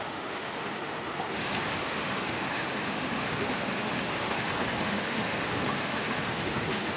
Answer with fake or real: fake